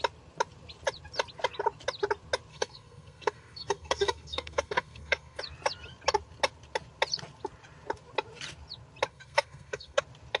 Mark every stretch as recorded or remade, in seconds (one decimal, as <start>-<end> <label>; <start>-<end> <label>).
0.0-2.5 recorded; 2.5-5.4 remade; 5.4-9.1 recorded; 9.1-10.0 remade; 10.0-10.4 recorded